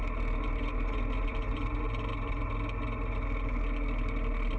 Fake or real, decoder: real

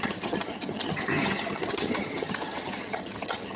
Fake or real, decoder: fake, vocoder, HiFi-GAN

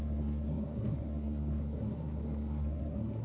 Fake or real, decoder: fake, codec, SNAC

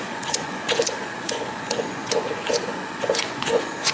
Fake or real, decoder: fake, vocoder, Vocos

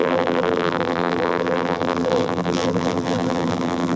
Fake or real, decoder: fake, vocoder, BigVGAN v2